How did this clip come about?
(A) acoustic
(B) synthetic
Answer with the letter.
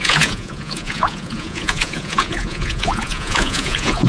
B